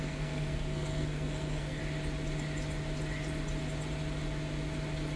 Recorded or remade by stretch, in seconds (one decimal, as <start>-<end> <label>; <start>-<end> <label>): 0.0-1.8 remade; 1.8-5.2 recorded